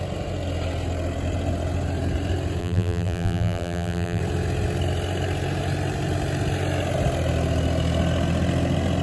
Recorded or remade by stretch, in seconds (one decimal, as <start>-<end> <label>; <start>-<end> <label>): 0.0-2.6 recorded; 2.6-4.2 remade; 4.2-9.0 recorded